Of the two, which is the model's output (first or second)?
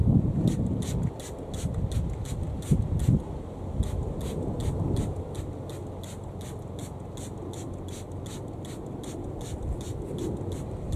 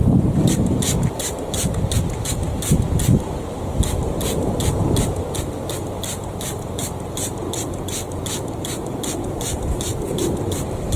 second